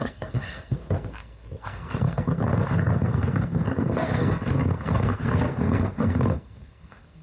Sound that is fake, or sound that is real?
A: fake